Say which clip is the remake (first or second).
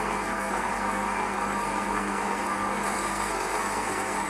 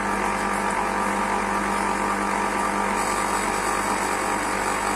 first